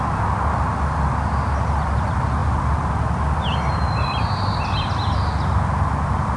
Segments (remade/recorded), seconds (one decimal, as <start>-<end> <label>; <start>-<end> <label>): 0.0-6.4 recorded